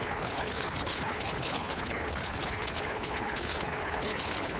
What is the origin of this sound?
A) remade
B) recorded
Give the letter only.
A